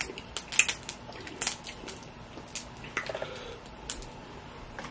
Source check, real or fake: real